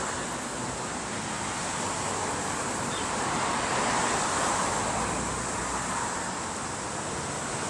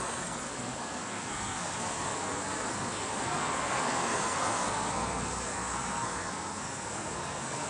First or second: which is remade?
second